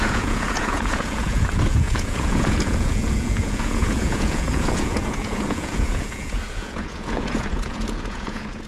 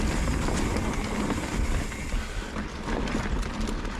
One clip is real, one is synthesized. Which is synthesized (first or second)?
first